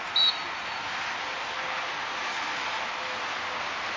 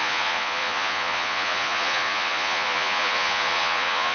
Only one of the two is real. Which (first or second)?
first